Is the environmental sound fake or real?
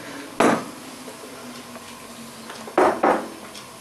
real